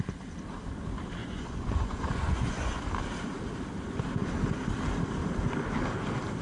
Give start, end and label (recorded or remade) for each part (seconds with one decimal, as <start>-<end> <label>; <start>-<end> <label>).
0.0-1.2 recorded; 1.2-2.8 remade; 2.8-6.4 recorded